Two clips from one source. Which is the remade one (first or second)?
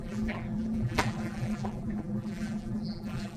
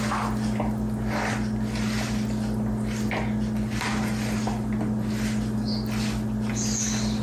first